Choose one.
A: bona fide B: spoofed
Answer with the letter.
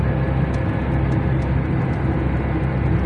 A